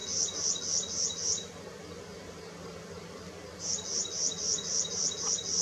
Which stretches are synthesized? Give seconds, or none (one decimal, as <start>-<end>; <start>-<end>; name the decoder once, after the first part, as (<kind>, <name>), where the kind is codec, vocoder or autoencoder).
none